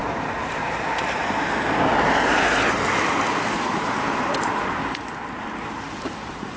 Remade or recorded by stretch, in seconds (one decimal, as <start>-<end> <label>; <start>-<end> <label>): 0.0-1.0 recorded; 1.0-1.9 remade; 1.9-3.4 recorded; 3.4-4.8 remade; 4.8-5.4 recorded; 5.4-6.6 remade